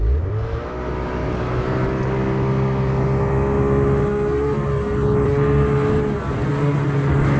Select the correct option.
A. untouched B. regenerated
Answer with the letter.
A